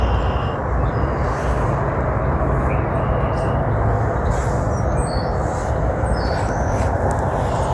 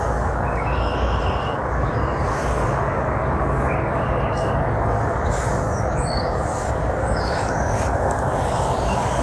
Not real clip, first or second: second